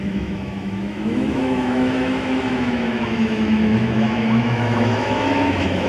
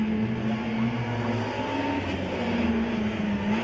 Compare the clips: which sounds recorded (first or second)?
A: second